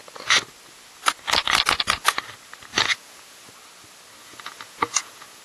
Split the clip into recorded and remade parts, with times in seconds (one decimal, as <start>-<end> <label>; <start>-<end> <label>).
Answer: 0.0-2.7 recorded; 2.7-3.5 remade; 3.5-4.2 recorded; 4.2-5.4 remade